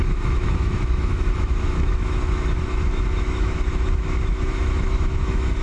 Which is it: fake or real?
fake